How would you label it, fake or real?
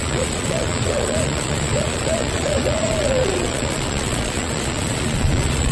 fake